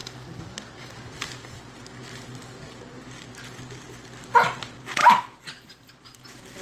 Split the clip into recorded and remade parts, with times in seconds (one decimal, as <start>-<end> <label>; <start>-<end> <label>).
0.0-6.6 recorded